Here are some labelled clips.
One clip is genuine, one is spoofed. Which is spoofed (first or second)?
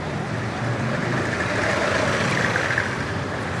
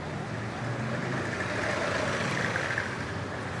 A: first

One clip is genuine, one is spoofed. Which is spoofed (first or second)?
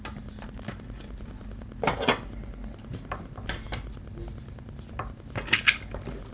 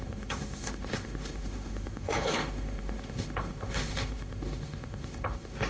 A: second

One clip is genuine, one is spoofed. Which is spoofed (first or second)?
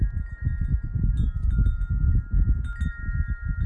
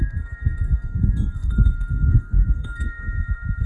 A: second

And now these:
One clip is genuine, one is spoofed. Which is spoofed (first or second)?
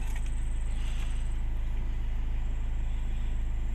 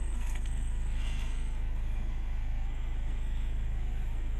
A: second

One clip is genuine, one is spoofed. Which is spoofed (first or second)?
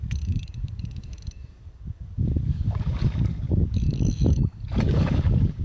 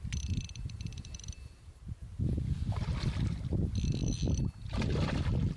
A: first